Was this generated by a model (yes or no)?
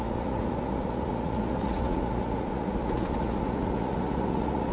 yes